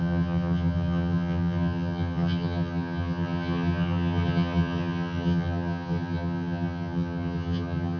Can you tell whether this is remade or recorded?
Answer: remade